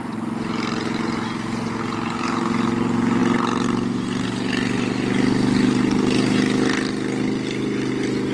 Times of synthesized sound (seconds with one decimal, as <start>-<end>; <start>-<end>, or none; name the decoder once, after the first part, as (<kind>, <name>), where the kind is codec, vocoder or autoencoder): none